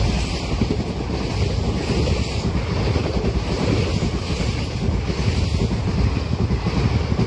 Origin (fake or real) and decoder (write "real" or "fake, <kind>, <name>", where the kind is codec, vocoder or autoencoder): real